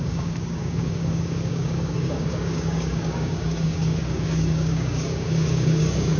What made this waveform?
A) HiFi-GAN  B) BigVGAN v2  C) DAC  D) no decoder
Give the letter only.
C